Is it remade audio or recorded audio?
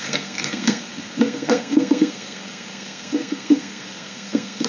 remade